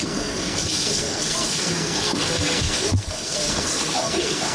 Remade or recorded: remade